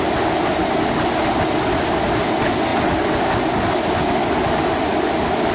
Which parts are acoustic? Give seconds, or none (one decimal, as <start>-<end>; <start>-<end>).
0.0-5.5